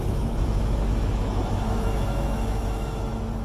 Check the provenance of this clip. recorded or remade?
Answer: remade